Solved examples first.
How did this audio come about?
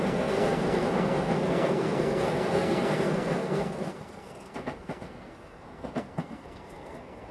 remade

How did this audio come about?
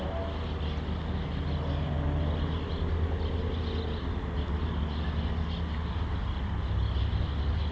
recorded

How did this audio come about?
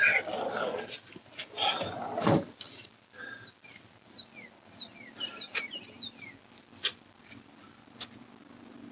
recorded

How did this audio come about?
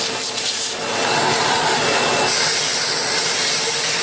remade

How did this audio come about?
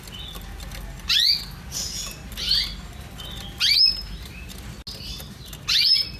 recorded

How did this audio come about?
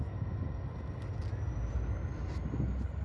recorded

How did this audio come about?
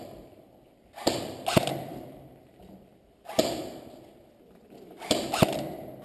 remade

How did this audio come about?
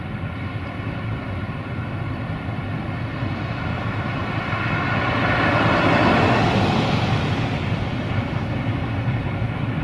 recorded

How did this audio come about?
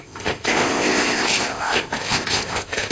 remade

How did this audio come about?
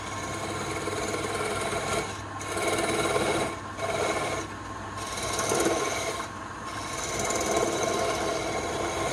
recorded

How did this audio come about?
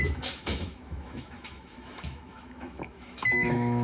remade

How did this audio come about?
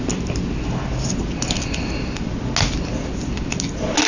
recorded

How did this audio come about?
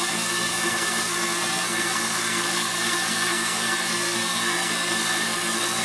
remade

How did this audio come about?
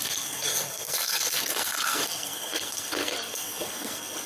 remade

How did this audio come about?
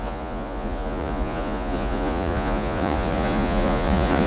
remade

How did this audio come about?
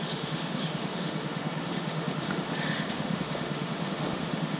remade